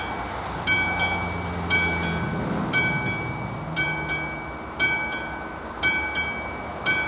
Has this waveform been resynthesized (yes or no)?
no